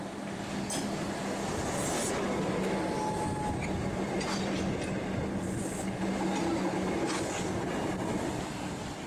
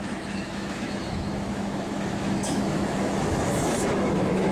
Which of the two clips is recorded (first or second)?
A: first